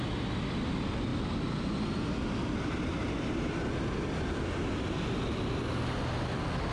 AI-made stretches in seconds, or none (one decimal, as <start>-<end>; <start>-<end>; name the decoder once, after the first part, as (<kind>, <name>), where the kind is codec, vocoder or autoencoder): none